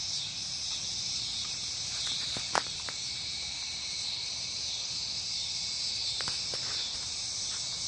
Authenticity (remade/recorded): remade